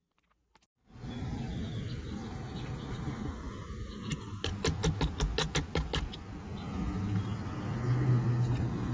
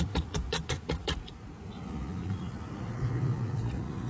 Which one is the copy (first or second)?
second